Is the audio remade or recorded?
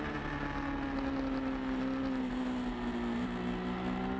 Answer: recorded